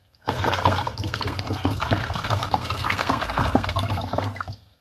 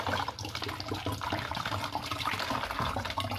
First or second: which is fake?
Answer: first